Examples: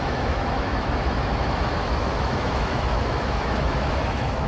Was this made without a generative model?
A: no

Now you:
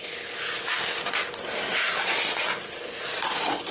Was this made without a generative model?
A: yes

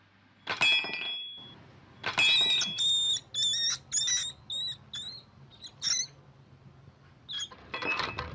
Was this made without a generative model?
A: yes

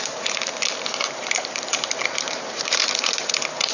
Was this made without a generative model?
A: no